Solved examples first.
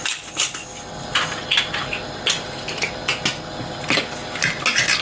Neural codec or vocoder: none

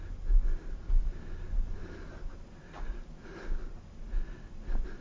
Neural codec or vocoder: none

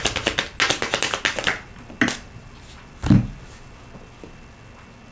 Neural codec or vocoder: none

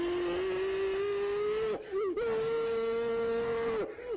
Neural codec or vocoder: none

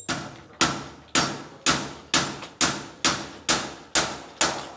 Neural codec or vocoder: none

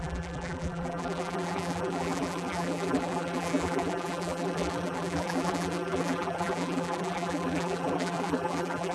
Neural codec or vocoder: vocoder, BigVGAN v2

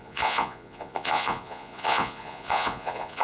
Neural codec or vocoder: vocoder, Vocos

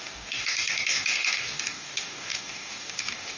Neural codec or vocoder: codec, DAC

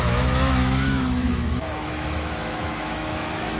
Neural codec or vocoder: autoencoder, DAC-VAE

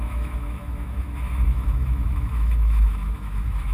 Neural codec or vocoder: autoencoder, DAC-VAE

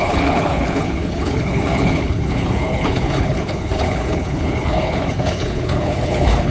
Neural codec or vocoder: codec, HILCodec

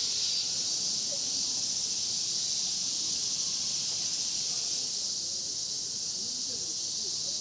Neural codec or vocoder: none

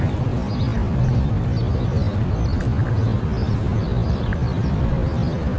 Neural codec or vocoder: none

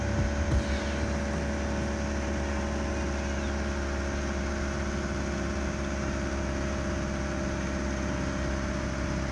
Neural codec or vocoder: none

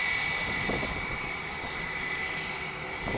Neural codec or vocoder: none